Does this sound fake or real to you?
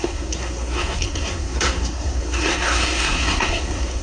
fake